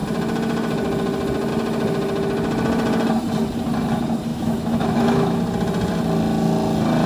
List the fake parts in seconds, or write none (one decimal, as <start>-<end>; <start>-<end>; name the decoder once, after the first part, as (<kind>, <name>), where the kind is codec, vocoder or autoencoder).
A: 4.3-5.4 (autoencoder, DAC-VAE)